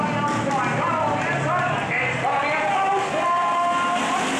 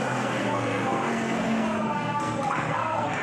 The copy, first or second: second